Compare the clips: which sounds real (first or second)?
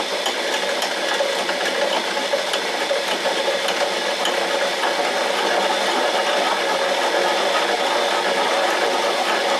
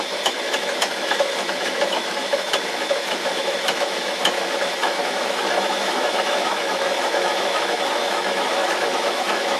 first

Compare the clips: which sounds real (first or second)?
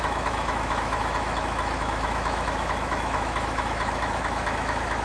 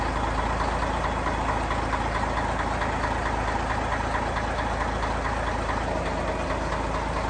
second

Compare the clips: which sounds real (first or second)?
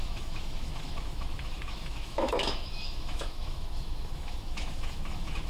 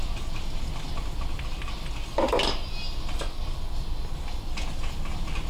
second